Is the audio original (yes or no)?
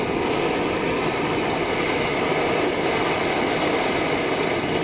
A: yes